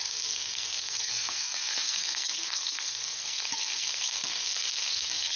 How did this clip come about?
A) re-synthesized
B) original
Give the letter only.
A